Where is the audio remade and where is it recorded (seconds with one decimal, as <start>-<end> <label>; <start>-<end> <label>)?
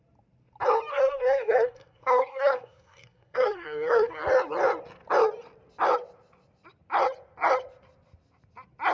0.0-0.9 recorded; 0.9-4.2 remade; 4.2-8.9 recorded